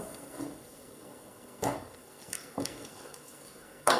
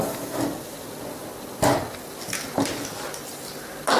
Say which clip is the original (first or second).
second